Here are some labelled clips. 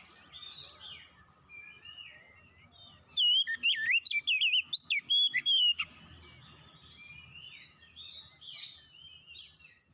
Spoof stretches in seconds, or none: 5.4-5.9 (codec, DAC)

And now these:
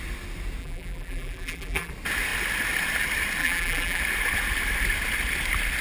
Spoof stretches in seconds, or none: 0.6-1.9 (vocoder, BigVGAN v2); 3.4-4.0